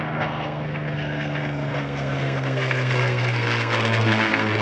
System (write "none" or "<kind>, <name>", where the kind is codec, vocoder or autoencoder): codec, SNAC